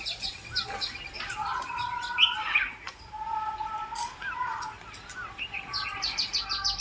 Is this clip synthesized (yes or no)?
no